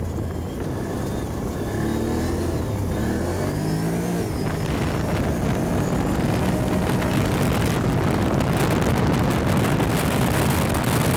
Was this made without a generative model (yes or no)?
yes